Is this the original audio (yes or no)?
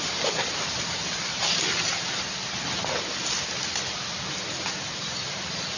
yes